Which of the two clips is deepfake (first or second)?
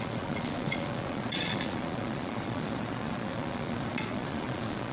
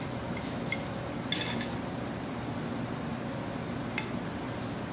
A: first